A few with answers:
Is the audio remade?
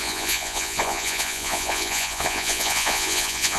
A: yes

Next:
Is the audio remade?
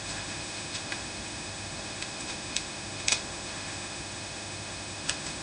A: yes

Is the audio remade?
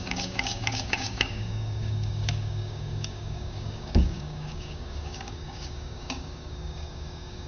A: yes